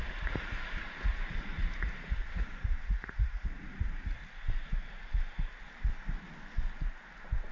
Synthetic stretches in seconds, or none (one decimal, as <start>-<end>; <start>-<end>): 0.0-4.2